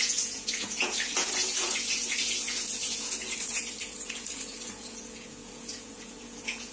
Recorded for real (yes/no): no